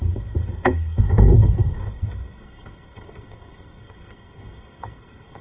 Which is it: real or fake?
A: fake